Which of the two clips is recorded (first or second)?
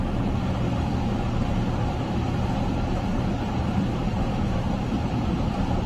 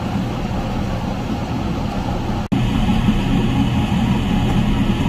second